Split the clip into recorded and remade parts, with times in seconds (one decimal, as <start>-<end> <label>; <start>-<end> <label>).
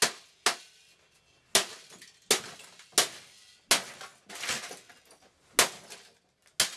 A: 0.0-6.8 recorded